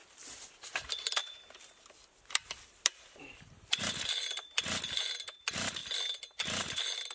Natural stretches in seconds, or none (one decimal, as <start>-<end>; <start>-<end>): 0.5-1.2; 3.8-7.1